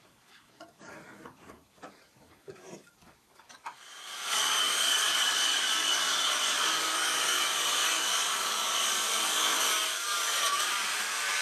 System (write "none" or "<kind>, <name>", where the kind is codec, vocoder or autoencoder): codec, DAC